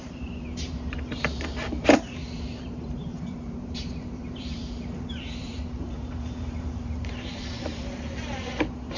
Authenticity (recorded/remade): remade